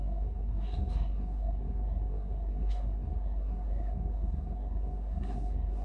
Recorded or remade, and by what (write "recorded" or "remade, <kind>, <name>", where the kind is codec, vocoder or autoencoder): remade, codec, SNAC